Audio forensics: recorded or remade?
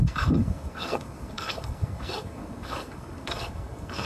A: remade